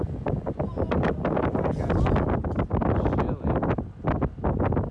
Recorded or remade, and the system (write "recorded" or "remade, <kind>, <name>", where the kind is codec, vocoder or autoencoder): recorded